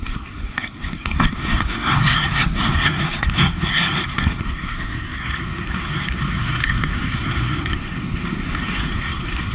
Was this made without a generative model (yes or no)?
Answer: no